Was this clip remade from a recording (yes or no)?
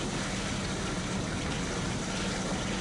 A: no